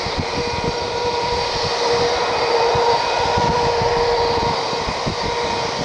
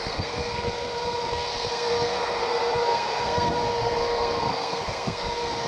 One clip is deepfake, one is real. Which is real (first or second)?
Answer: first